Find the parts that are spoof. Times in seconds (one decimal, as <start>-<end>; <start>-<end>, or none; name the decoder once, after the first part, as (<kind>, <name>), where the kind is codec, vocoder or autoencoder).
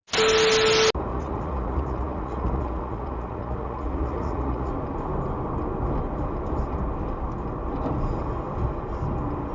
1.1-4.7 (vocoder, Vocos)